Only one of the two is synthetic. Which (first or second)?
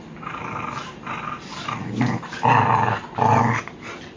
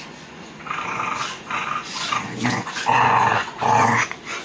second